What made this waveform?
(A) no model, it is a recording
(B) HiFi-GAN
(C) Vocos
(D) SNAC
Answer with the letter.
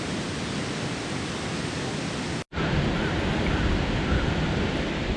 A